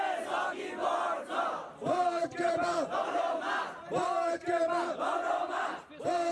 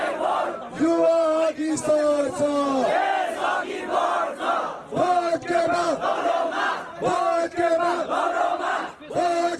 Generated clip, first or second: first